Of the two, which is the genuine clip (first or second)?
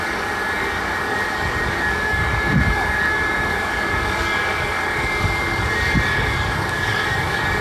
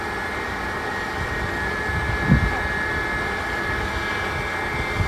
second